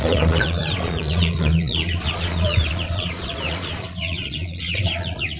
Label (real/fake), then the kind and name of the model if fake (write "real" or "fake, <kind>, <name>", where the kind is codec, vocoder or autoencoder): fake, vocoder, Vocos